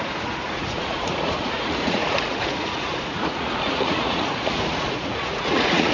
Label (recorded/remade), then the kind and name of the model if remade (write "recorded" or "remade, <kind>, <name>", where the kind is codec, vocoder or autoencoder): remade, vocoder, Vocos